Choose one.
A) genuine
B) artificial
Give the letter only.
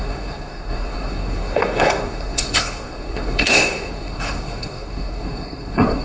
B